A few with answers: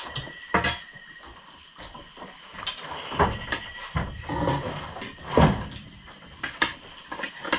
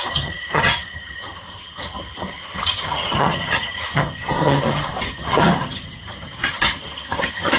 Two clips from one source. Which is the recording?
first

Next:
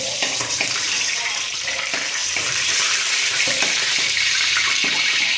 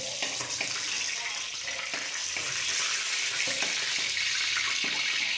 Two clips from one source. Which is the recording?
second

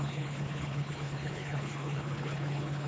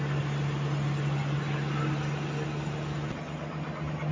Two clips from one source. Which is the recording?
second